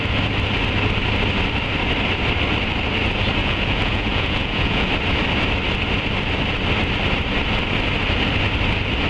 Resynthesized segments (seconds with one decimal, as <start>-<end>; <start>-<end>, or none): 3.4-4.9